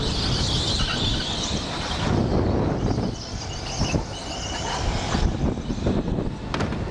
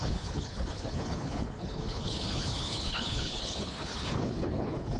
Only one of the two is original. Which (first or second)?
first